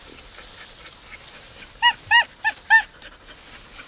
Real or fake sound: real